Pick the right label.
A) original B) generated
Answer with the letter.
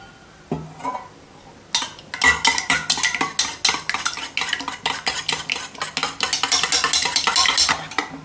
A